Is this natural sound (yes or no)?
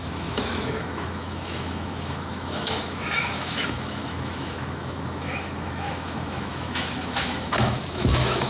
no